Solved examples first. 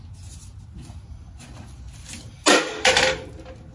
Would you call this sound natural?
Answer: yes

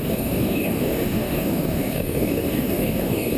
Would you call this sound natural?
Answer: no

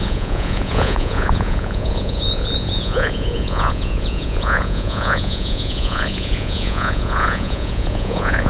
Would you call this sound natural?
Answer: no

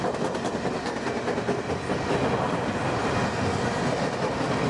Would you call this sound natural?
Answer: yes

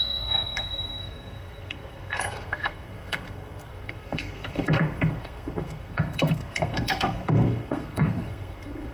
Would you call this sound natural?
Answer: no